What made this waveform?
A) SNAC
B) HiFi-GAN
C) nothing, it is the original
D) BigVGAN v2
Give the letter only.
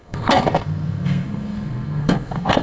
A